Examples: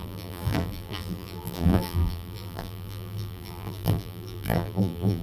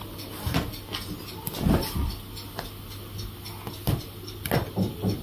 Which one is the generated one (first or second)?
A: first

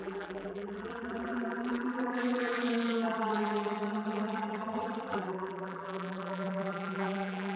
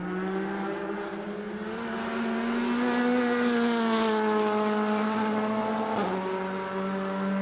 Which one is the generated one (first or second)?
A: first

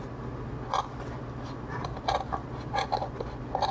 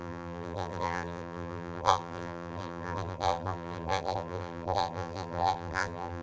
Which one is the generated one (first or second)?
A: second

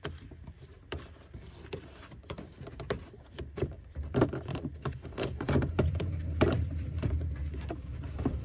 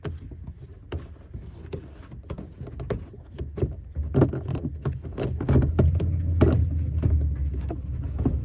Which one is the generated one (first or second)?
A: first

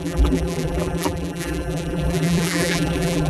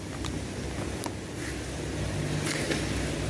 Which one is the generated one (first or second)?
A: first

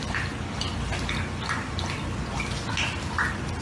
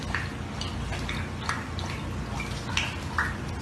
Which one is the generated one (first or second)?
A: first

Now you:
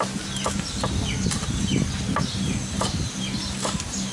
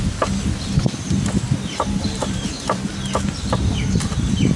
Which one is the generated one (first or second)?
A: second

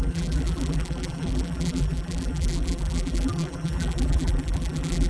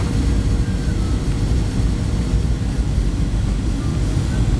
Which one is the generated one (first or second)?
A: first